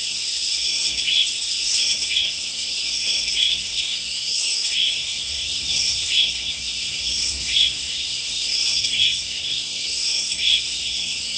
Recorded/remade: remade